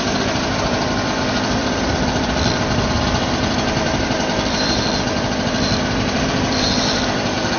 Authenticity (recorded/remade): remade